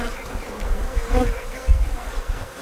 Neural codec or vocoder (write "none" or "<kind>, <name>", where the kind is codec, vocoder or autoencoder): codec, SNAC